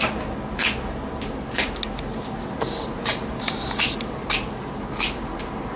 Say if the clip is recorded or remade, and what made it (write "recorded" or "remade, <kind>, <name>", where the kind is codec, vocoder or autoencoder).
recorded